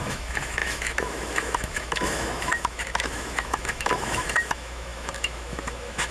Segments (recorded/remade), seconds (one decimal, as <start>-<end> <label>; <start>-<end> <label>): 0.0-6.1 remade